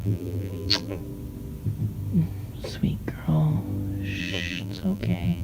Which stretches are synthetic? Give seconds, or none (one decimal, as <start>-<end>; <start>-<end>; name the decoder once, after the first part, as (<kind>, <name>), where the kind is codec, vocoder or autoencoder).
0.0-1.0 (vocoder, BigVGAN v2); 4.2-5.4

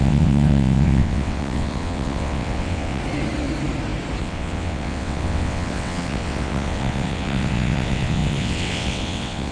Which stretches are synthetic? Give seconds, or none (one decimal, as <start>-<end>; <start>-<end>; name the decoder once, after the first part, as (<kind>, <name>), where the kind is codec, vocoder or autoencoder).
0.0-3.0 (vocoder, WaveNeXt); 4.2-9.5

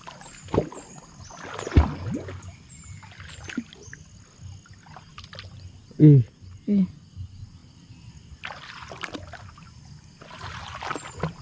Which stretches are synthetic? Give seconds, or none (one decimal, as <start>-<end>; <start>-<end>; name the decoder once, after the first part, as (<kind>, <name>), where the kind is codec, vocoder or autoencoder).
none

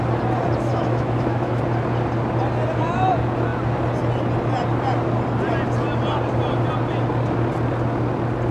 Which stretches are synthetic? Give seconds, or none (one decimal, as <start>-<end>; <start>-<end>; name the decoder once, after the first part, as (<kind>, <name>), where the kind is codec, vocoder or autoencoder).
0.7-1.6 (autoencoder, DAC-VAE)

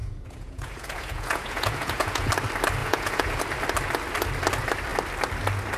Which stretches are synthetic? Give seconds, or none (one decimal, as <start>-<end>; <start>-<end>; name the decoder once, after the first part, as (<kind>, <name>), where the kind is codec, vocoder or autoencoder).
0.0-2.3 (vocoder, Vocos); 2.8-3.4

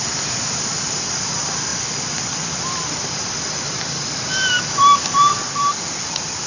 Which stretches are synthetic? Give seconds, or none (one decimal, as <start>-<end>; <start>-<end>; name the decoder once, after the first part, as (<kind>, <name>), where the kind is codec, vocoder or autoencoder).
0.0-6.5 (vocoder, BigVGAN v2)

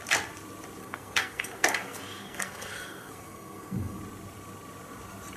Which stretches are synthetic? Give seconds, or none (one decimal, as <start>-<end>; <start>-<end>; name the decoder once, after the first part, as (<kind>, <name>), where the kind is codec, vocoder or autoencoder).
0.8-4.0 (codec, SNAC)